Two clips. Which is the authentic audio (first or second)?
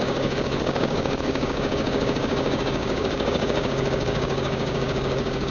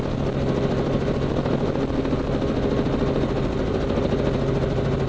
second